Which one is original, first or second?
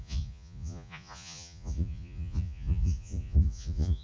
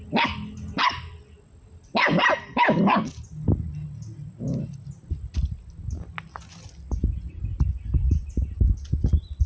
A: second